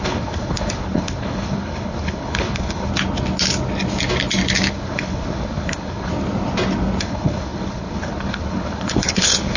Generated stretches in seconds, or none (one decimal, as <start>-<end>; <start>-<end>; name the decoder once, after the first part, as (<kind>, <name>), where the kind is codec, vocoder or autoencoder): 0.0-2.9 (codec, HILCodec); 4.7-6.1; 7.0-9.6